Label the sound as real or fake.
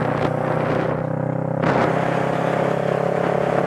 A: real